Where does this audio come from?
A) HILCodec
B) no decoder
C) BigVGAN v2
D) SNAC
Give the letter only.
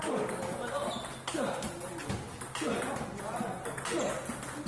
B